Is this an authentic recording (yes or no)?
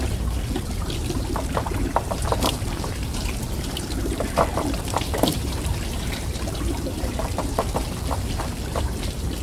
no